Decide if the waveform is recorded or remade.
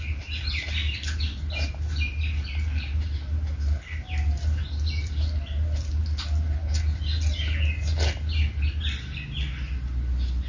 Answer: recorded